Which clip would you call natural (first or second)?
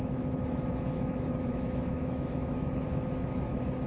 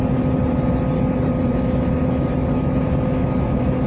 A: second